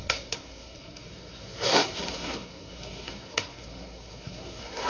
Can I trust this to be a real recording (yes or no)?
no